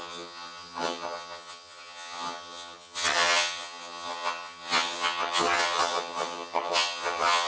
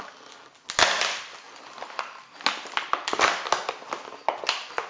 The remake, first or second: first